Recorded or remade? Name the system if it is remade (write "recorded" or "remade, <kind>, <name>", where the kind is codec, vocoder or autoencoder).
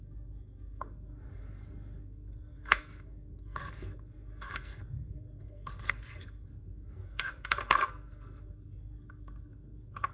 remade, codec, SNAC